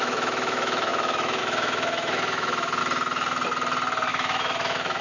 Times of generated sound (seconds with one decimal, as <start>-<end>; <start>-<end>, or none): 0.0-2.8; 4.1-5.0